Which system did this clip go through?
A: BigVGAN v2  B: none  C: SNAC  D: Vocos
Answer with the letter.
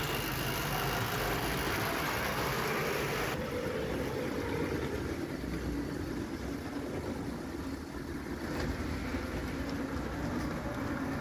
B